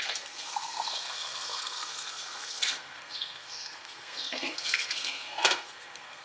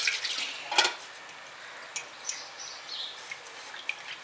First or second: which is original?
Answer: second